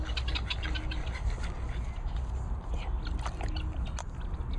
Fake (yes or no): no